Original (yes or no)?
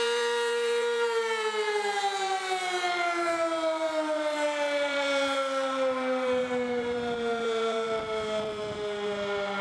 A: no